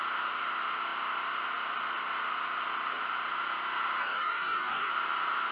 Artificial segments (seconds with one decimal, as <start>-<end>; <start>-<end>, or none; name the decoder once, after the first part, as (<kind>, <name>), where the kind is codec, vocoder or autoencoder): 4.0-4.9 (codec, DAC)